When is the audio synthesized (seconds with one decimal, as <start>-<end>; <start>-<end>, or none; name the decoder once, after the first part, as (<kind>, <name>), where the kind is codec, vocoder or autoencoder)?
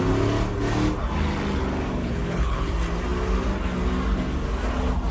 2.0-2.7 (codec, HILCodec)